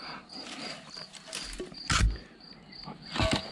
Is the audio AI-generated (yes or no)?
no